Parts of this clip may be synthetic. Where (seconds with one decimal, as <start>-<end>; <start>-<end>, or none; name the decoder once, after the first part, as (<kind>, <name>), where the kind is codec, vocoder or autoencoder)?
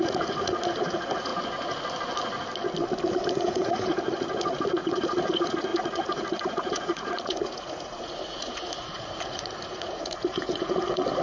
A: 0.0-1.3 (vocoder, Vocos); 3.4-11.2